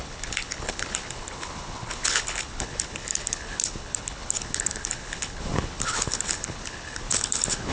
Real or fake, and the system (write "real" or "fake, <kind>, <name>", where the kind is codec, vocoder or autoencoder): fake, codec, HILCodec